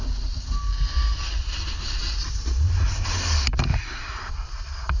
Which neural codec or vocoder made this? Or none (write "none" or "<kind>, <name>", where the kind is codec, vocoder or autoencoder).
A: none